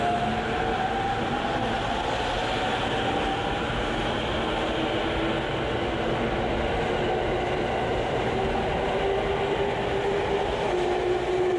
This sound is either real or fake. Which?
real